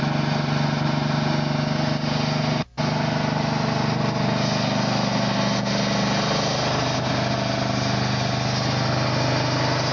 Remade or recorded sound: recorded